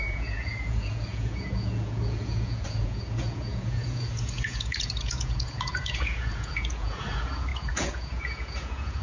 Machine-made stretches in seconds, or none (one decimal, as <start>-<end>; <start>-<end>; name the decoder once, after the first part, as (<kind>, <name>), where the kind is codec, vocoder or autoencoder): 0.0-9.0 (vocoder, Vocos)

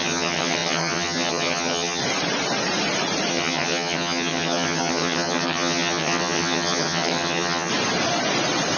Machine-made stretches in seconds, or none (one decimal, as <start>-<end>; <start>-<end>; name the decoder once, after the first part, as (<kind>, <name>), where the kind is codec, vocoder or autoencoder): 0.0-2.0 (vocoder, HiFi-GAN); 3.3-7.7

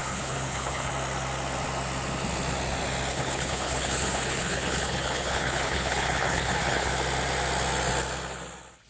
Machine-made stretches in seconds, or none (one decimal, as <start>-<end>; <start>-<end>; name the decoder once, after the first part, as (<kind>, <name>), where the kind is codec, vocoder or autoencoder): 0.0-0.9 (codec, HILCodec); 3.1-6.9

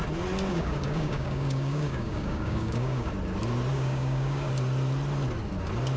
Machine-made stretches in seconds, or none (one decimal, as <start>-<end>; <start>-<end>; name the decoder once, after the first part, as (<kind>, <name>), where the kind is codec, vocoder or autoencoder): 0.5-3.1 (codec, DAC); 3.7-4.5

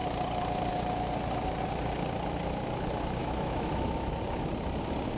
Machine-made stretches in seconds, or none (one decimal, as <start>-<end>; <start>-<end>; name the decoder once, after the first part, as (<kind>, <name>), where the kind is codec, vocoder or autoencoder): 3.2-4.2 (autoencoder, DAC-VAE)

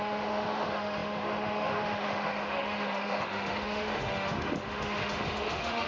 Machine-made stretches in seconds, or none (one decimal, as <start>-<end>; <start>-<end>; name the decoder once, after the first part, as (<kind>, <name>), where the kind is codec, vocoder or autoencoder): 0.0-5.9 (autoencoder, DAC-VAE)